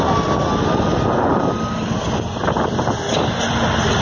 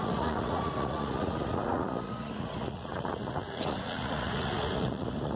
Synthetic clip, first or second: second